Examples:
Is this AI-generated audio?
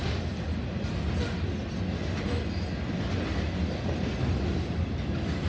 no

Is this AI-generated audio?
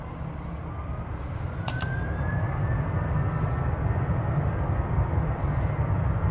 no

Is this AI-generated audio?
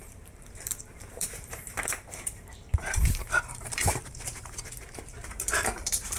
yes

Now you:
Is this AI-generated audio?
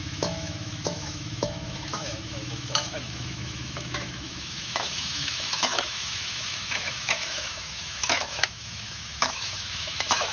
yes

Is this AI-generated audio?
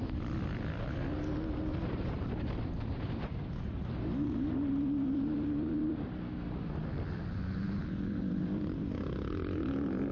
yes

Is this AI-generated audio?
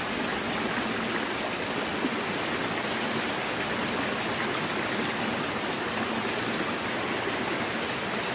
no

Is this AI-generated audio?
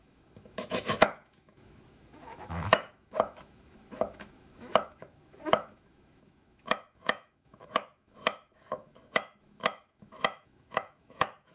yes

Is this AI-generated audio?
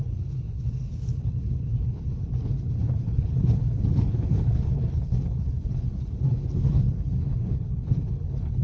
yes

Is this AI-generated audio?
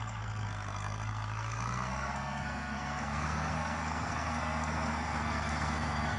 yes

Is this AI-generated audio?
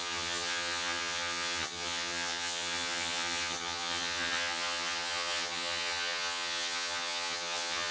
yes